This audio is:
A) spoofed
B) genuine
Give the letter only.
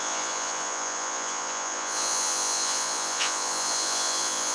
A